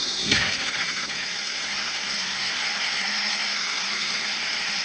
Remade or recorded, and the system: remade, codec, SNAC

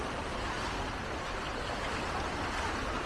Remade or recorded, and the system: recorded